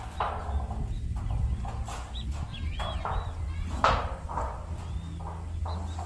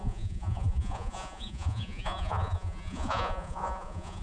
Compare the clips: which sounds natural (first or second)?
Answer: first